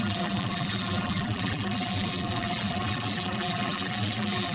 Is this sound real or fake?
fake